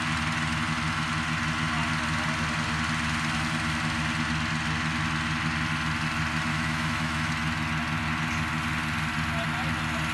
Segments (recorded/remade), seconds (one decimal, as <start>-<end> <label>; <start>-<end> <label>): 0.0-6.5 recorded; 6.5-7.3 remade; 7.3-10.1 recorded